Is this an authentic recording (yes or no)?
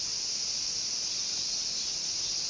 yes